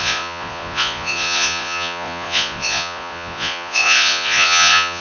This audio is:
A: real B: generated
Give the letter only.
B